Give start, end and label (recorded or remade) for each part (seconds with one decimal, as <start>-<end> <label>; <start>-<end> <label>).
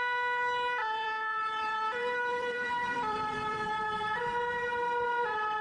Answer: 0.0-0.8 recorded; 0.8-4.2 remade; 4.2-5.6 recorded